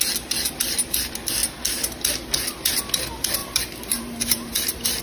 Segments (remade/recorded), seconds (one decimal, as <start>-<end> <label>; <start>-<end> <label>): 0.0-3.4 recorded; 3.4-5.0 remade